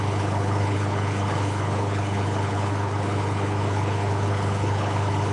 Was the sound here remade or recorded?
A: remade